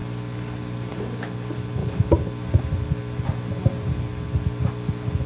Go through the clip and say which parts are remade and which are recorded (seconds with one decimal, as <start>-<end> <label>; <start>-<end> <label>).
0.0-5.3 recorded